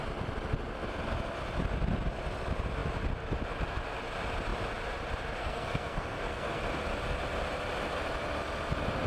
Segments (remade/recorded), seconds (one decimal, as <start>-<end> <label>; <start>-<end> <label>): 0.0-5.4 recorded; 5.4-6.6 remade; 6.6-9.1 recorded